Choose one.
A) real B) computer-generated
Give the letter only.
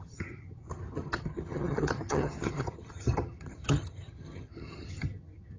B